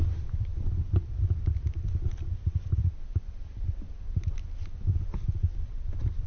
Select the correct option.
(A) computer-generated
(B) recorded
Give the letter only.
B